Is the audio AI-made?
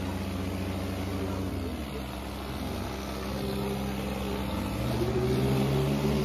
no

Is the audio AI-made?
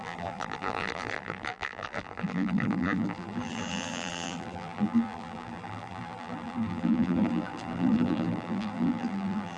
yes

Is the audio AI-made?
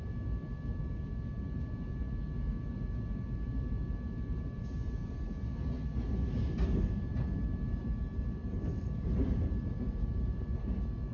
no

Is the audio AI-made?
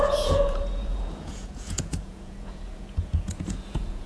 yes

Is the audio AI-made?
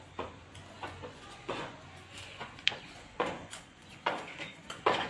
yes